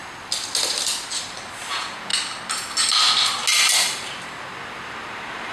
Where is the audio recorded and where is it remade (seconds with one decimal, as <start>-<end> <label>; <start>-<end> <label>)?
0.0-1.7 recorded; 1.7-2.1 remade; 2.1-5.5 recorded